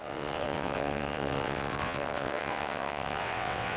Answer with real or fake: fake